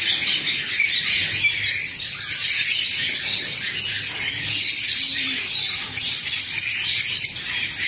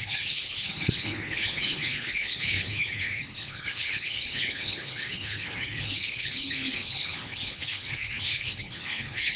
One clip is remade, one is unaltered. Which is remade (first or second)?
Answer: second